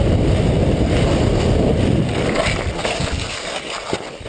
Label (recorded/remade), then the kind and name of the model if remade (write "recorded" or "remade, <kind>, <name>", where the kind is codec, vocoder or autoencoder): recorded